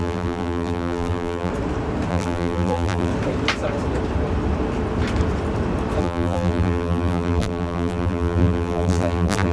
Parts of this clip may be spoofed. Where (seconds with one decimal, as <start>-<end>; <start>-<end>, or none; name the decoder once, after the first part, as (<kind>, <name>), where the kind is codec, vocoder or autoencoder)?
0.0-1.5 (vocoder, BigVGAN v2); 2.1-3.1; 6.0-9.5